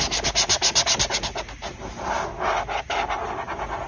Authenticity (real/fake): real